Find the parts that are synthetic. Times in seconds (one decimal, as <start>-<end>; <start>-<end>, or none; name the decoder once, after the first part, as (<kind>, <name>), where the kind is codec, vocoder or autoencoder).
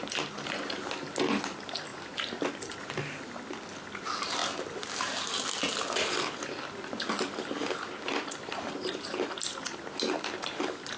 none